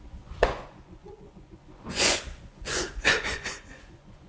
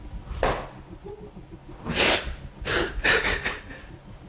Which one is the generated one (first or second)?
first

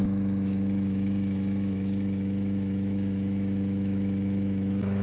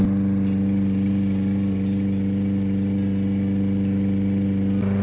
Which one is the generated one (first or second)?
first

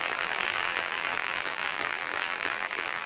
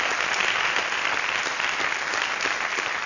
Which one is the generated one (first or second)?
first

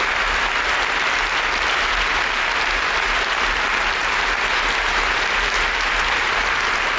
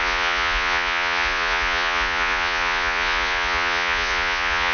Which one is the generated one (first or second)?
second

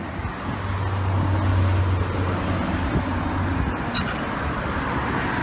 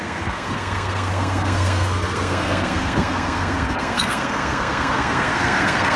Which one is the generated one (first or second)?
second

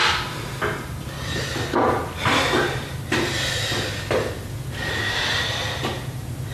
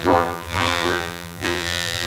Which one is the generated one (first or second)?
second